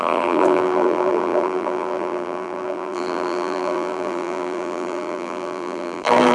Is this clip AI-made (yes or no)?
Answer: yes